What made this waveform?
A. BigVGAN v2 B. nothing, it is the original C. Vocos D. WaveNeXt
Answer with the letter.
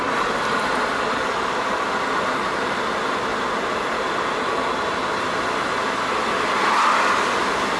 B